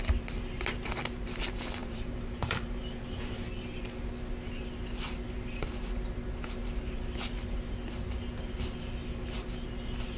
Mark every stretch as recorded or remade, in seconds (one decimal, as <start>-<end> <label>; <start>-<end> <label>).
0.0-1.8 recorded; 1.8-2.8 remade; 2.8-10.2 recorded